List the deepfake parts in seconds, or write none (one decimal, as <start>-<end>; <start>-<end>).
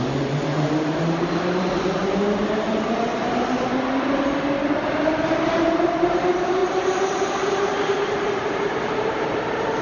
0.0-2.0; 2.7-3.1; 4.8-9.8